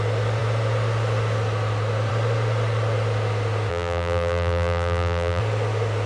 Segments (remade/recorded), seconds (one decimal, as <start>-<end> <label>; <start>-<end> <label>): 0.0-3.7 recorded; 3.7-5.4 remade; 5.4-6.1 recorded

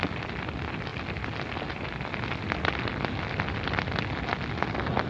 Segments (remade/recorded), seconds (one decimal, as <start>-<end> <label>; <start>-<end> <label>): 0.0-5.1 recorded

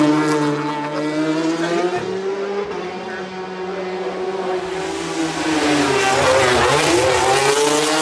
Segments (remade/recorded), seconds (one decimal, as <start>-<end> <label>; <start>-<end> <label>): 0.0-8.0 recorded